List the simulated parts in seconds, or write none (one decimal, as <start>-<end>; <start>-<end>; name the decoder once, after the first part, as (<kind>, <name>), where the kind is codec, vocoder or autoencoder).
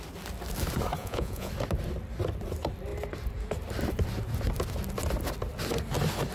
1.0-1.5 (vocoder, Vocos)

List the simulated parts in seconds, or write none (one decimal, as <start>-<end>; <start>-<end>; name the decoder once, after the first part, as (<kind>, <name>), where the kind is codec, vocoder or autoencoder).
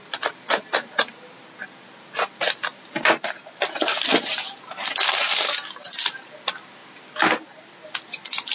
none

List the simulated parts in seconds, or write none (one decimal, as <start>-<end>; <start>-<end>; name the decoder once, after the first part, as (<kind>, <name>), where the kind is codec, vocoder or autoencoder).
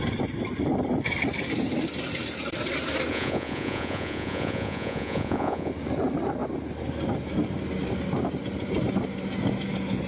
3.1-5.7 (vocoder, Vocos)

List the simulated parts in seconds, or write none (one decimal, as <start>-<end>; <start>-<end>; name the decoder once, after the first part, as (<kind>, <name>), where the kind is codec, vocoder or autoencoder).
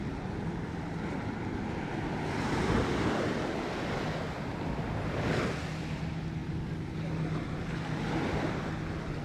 none